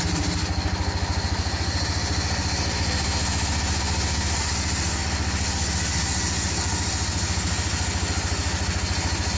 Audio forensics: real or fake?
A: real